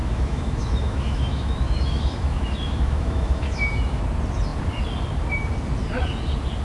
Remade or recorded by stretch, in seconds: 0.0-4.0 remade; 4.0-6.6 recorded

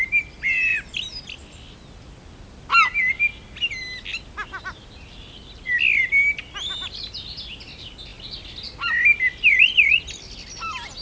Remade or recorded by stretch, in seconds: 0.0-11.0 recorded

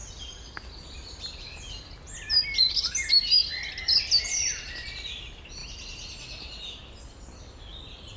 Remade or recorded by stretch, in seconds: 0.0-8.2 recorded

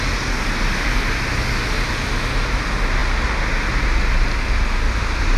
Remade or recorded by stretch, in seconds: 0.0-5.4 recorded

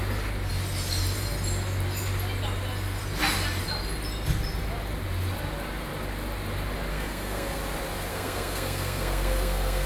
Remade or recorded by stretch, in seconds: 0.0-6.9 recorded; 6.9-7.6 remade; 7.6-8.1 recorded; 8.1-9.9 remade

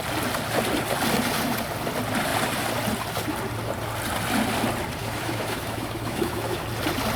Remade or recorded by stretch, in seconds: 0.0-5.0 recorded; 5.0-6.6 remade; 6.6-7.2 recorded

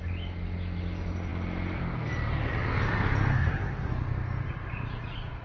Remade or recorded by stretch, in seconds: 0.0-3.3 recorded; 3.3-3.9 remade; 3.9-5.4 recorded